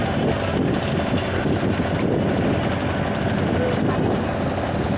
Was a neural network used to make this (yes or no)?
no